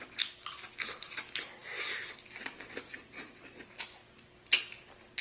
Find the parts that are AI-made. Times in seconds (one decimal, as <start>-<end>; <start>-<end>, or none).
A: none